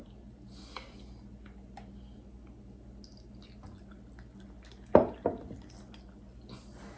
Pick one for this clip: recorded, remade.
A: recorded